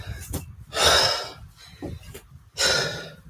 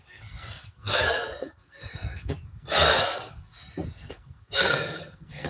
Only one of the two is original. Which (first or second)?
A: first